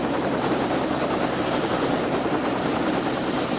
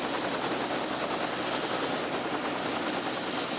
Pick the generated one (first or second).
first